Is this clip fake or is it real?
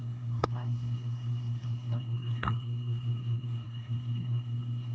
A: fake